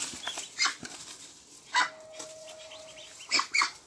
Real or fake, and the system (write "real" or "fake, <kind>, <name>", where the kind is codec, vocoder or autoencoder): real